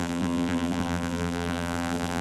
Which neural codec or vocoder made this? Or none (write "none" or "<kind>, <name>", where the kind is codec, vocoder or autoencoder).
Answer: vocoder, BigVGAN v2